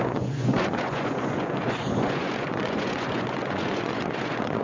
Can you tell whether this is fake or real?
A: fake